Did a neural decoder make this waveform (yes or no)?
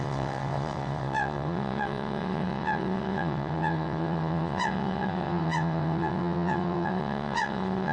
yes